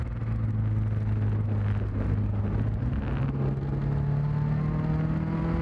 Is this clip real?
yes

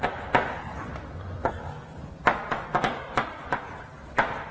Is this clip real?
yes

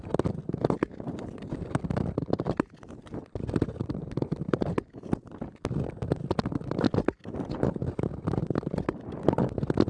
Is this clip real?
yes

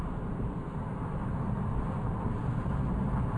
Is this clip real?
yes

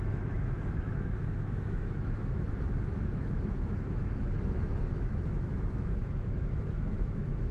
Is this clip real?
no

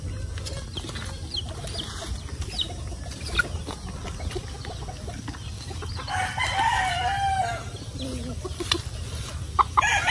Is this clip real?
yes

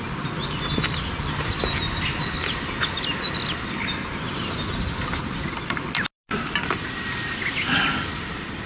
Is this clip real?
yes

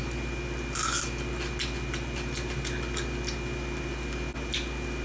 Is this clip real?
yes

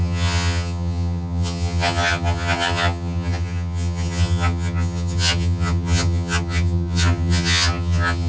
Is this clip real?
no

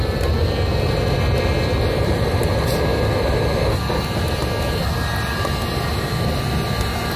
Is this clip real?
yes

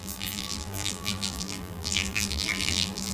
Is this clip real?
no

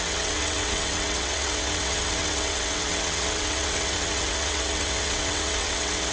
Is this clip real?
no